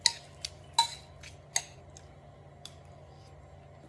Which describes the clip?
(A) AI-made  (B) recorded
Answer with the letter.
B